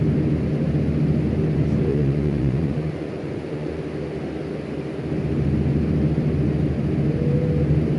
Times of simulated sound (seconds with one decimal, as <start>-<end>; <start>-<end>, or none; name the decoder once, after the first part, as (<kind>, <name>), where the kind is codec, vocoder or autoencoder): 1.9-3.8 (vocoder, Vocos)